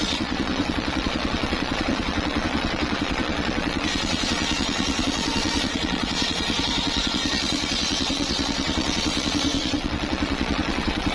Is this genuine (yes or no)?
no